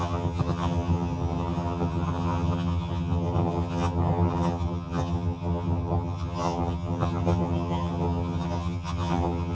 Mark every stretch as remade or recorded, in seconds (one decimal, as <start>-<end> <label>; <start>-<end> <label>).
0.0-9.5 remade